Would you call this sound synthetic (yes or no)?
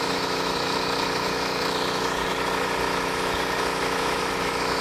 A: yes